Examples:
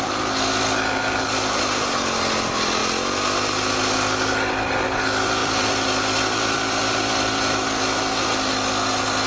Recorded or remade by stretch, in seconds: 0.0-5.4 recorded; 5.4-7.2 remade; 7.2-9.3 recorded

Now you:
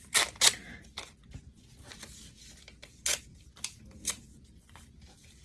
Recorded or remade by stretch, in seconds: 0.0-3.2 recorded; 3.2-5.4 remade

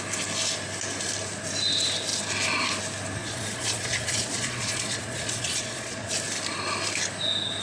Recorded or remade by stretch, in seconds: 0.0-3.2 recorded; 3.2-6.1 remade; 6.1-7.6 recorded

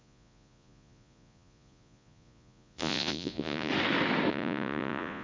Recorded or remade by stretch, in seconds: 0.0-3.7 remade; 3.7-4.3 recorded; 4.3-5.2 remade